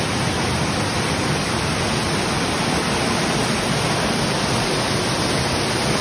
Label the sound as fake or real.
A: real